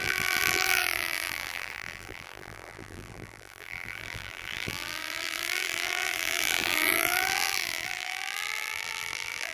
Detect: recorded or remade remade